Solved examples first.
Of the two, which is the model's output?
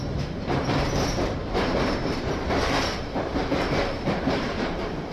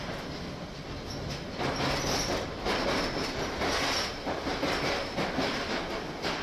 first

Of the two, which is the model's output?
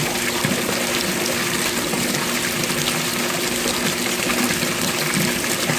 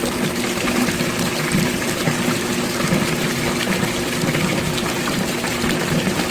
second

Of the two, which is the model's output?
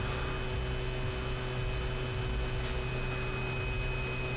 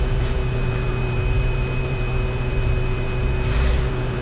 second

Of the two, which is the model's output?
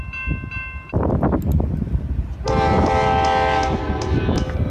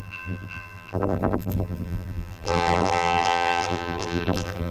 second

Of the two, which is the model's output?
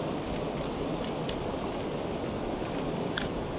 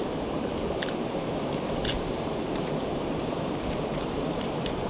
second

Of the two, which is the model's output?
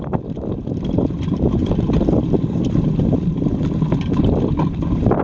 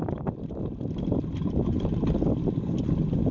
first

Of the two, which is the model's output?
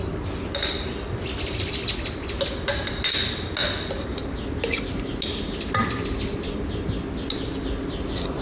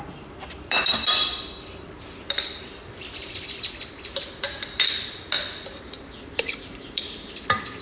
second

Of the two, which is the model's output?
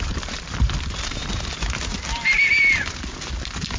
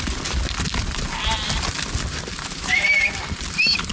second